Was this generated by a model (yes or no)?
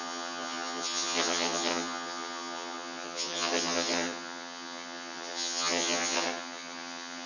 yes